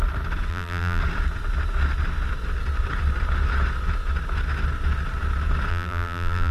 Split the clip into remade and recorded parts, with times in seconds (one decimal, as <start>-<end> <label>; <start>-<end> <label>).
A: 0.0-0.5 recorded; 0.5-1.0 remade; 1.0-5.7 recorded; 5.7-6.5 remade